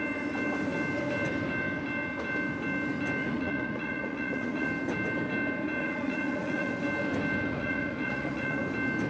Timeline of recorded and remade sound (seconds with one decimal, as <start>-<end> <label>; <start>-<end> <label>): 0.0-3.2 recorded; 3.2-4.7 remade; 4.7-5.8 recorded; 5.8-6.7 remade; 6.7-7.5 recorded; 7.5-8.6 remade; 8.6-9.1 recorded